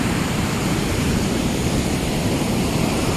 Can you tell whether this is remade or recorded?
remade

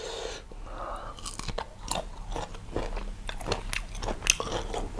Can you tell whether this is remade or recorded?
recorded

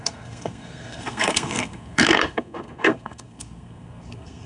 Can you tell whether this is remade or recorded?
remade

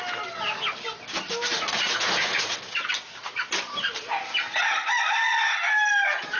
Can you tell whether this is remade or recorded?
recorded